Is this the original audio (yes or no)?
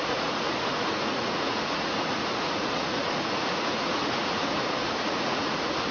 no